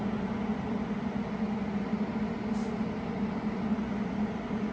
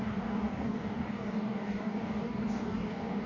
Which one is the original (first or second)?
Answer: first